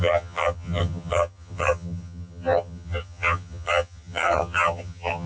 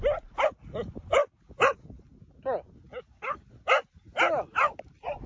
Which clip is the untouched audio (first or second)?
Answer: second